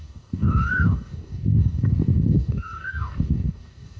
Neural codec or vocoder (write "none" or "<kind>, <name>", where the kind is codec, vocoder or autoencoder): codec, DAC